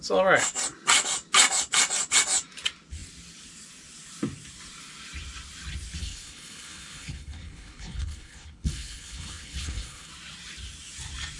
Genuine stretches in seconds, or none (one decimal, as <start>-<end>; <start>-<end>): 0.0-6.0; 10.1-11.4